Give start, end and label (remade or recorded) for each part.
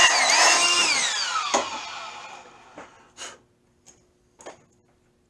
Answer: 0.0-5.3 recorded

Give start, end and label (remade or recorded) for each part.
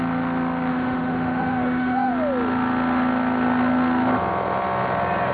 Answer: 0.0-0.7 recorded; 0.7-2.1 remade; 2.1-5.3 recorded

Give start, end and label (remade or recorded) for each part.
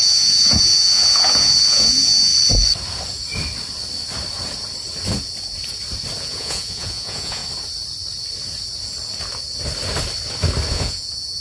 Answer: 0.0-2.3 remade; 2.3-6.2 recorded; 6.2-7.4 remade; 7.4-10.7 recorded; 10.7-11.4 remade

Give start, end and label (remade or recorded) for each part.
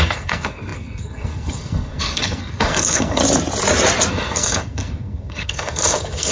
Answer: 0.0-3.2 remade; 3.2-4.1 recorded; 4.1-6.3 remade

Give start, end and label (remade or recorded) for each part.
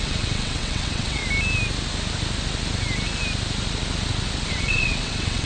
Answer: 0.0-1.2 remade; 1.2-4.5 recorded; 4.5-5.5 remade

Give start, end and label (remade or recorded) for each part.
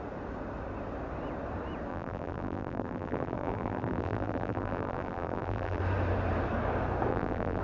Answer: 0.0-1.9 recorded; 1.9-5.8 remade; 5.8-7.1 recorded; 7.1-7.6 remade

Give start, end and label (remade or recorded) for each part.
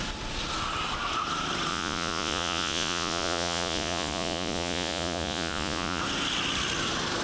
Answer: 0.0-1.7 recorded; 1.7-6.0 remade; 6.0-7.2 recorded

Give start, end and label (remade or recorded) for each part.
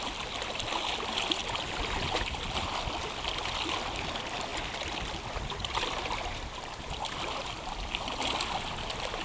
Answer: 0.0-9.2 recorded